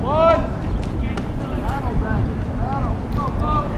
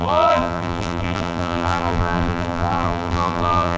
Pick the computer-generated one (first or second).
second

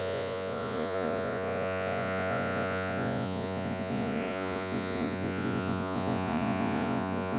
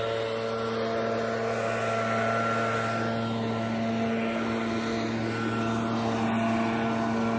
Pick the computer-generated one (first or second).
first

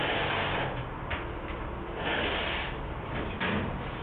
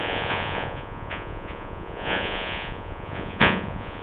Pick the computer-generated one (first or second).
second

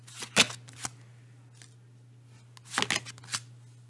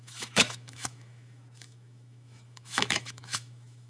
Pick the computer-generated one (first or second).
second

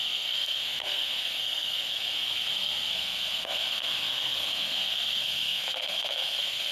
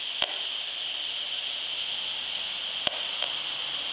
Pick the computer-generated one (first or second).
first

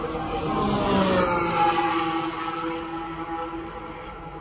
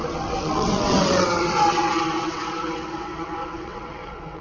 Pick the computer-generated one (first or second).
second